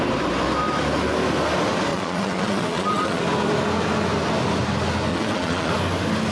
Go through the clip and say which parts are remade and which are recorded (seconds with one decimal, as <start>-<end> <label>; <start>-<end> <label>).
0.0-1.9 recorded; 1.9-3.2 remade; 3.2-5.1 recorded; 5.1-5.7 remade; 5.7-6.3 recorded